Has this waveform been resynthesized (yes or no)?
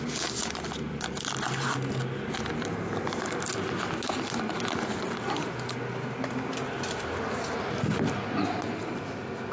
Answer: no